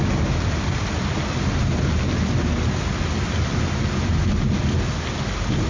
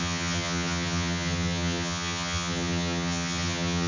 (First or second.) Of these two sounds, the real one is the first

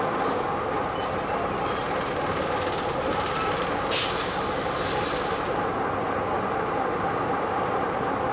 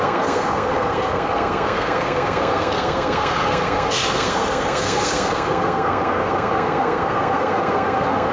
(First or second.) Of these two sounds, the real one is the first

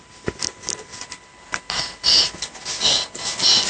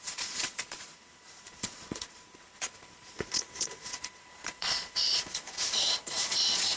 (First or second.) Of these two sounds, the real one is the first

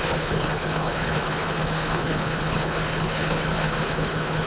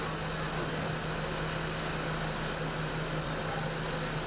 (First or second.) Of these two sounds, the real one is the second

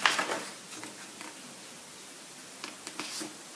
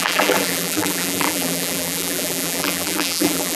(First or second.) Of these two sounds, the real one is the first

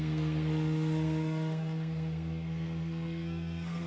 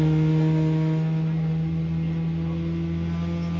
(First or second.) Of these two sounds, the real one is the second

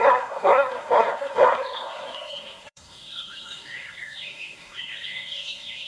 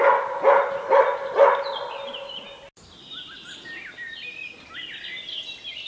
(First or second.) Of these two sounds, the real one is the second